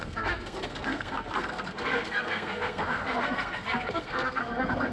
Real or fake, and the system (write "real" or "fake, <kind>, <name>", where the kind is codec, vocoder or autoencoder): fake, codec, SNAC